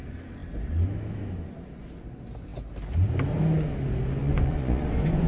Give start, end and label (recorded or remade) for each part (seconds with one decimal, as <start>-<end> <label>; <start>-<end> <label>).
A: 0.0-4.2 recorded; 4.2-5.3 remade